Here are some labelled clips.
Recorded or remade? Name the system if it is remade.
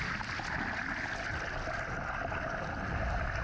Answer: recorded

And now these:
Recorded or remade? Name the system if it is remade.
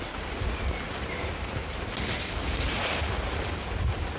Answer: remade, vocoder, BigVGAN v2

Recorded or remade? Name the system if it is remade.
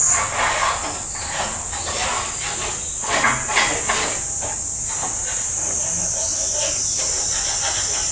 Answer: recorded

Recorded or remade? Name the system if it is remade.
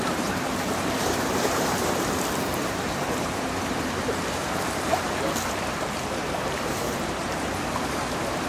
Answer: remade, vocoder, BigVGAN v2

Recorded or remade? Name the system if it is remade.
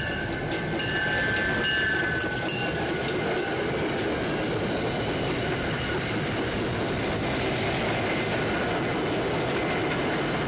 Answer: recorded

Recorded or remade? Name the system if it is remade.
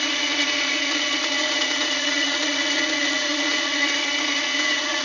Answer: remade, vocoder, Vocos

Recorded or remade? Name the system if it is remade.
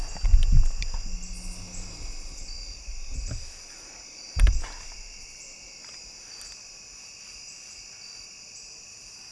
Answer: recorded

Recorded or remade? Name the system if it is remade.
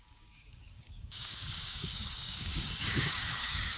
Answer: remade, codec, DAC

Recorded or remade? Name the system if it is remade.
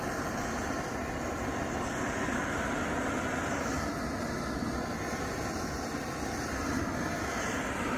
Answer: recorded